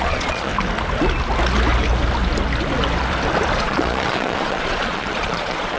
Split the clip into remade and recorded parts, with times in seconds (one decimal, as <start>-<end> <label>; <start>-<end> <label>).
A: 0.0-0.5 remade; 0.5-3.6 recorded; 3.6-5.8 remade